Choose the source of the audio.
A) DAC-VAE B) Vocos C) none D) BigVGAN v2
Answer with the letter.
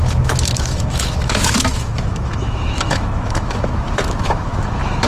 A